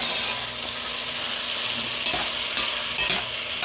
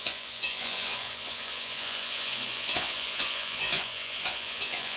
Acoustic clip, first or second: first